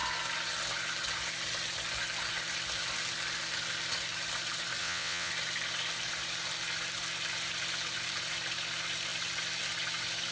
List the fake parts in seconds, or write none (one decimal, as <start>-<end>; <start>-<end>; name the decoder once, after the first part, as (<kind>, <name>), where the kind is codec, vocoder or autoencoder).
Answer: 4.8-5.3 (vocoder, WaveNeXt)